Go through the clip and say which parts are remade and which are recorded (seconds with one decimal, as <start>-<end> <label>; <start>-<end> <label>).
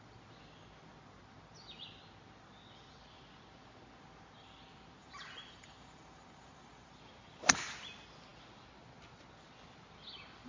0.0-5.0 recorded; 5.0-7.0 remade; 7.0-10.5 recorded